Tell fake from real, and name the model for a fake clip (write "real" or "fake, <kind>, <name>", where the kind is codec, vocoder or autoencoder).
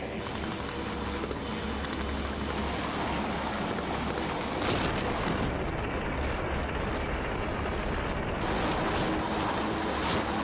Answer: real